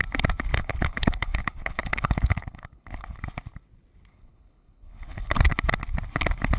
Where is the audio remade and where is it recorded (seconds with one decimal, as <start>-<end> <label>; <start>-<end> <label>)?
0.0-0.5 recorded; 0.5-3.2 remade; 3.2-4.1 recorded; 4.1-5.5 remade; 5.5-6.6 recorded